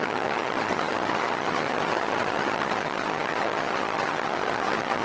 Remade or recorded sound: remade